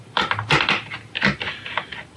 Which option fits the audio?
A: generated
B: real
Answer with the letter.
B